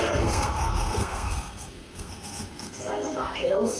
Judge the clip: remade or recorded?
remade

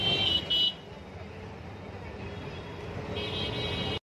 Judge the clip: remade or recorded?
recorded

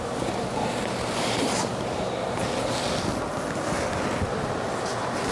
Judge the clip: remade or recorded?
recorded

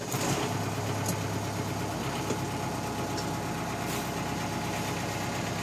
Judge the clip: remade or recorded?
recorded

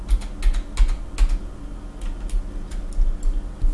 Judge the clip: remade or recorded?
recorded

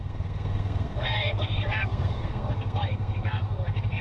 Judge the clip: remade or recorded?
remade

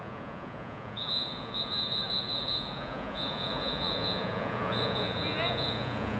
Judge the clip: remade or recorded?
remade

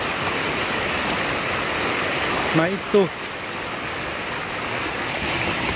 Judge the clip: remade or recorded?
recorded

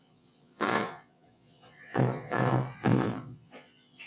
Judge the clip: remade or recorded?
remade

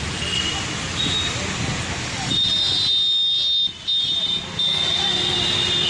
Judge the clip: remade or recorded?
recorded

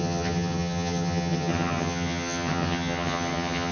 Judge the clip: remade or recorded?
remade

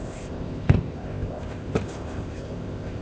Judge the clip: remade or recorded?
remade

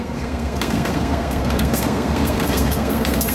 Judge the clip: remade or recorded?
remade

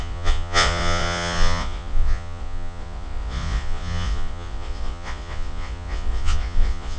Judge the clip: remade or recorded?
remade